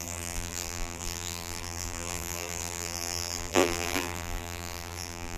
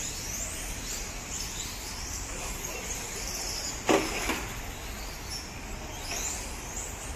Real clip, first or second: second